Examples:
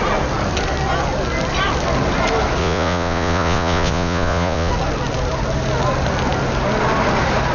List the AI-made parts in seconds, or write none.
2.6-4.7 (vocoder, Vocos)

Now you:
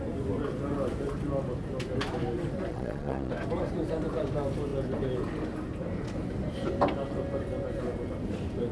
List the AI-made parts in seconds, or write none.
2.7-3.3 (vocoder, Vocos)

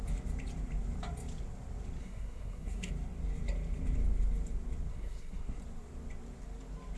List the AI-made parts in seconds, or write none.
2.0-2.9 (codec, SNAC); 4.9-5.6

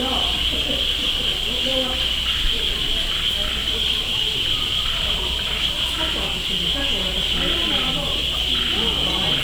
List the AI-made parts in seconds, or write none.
3.6-6.0 (vocoder, BigVGAN v2); 7.6-8.2